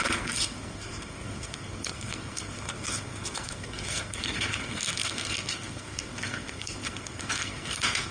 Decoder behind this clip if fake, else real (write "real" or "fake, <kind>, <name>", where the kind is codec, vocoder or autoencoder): fake, codec, SNAC